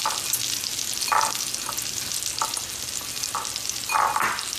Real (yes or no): yes